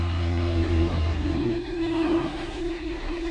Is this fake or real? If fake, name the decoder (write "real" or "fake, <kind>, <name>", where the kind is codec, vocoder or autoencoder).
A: fake, codec, SNAC